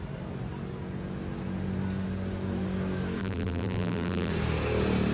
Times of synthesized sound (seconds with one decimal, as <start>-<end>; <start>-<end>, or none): 3.2-4.3